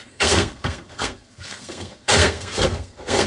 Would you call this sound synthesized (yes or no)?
yes